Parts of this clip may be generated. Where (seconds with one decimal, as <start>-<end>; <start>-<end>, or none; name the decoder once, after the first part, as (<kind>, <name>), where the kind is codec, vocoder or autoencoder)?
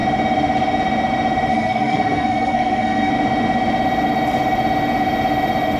1.5-3.1 (codec, SNAC)